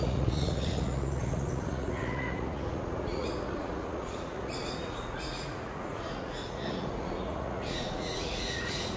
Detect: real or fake fake